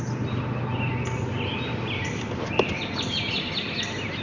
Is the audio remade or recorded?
recorded